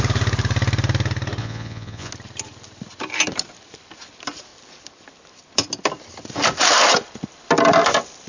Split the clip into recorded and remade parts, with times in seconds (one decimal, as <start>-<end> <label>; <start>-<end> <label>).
0.0-1.4 recorded; 1.4-2.1 remade; 2.1-8.3 recorded